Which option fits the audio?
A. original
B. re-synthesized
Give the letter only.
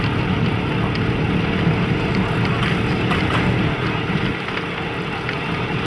A